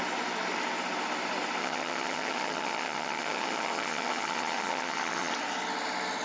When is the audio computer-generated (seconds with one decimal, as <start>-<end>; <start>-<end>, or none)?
1.6-5.3